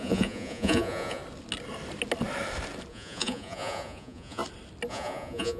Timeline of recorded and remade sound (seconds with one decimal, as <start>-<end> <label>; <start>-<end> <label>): 0.0-1.2 remade; 1.2-2.9 recorded; 2.9-4.4 remade; 4.4-4.9 recorded; 4.9-5.6 remade